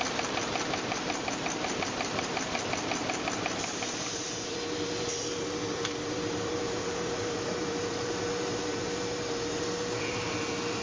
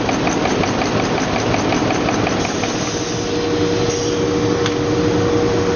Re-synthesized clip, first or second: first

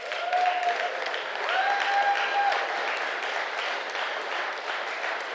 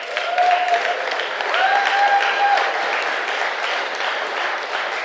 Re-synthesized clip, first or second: second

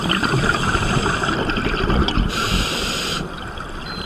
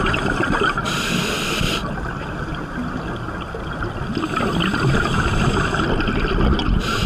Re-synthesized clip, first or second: first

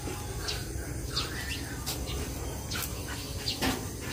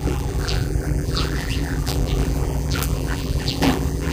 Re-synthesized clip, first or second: second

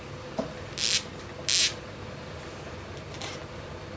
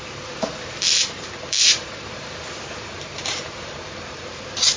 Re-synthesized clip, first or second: second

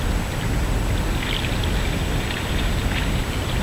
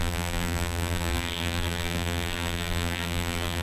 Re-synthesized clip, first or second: second